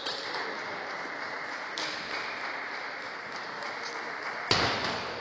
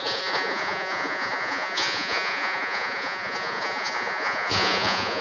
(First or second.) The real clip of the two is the first